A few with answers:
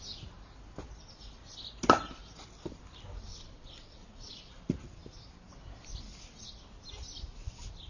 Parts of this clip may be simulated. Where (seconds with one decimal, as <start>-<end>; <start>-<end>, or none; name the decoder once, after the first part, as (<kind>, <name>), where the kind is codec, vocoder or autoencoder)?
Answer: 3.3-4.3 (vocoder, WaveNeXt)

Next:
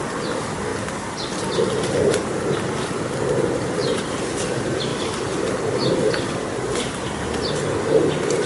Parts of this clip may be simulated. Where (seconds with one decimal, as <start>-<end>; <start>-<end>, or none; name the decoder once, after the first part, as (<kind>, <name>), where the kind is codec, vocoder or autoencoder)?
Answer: 3.8-4.3 (vocoder, BigVGAN v2); 4.9-6.8

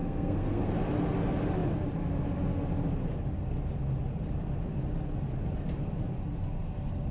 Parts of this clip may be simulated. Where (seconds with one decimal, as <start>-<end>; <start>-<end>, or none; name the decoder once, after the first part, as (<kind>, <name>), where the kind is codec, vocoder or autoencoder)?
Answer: 0.0-0.7 (codec, SNAC)